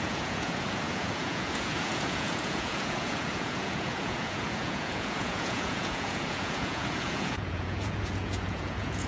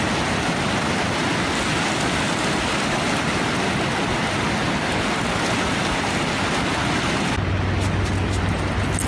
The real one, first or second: second